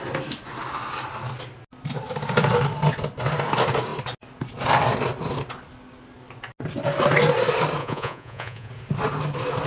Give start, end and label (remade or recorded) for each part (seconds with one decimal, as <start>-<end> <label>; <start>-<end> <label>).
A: 0.0-7.8 recorded; 7.8-8.7 remade; 8.7-9.7 recorded